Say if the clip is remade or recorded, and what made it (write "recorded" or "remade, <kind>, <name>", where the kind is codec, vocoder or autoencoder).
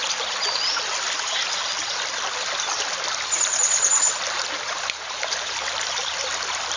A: recorded